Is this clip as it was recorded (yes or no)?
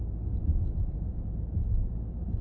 yes